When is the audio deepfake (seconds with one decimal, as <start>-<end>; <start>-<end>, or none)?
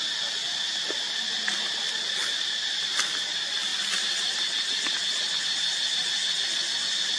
none